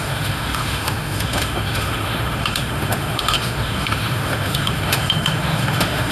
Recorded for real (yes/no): no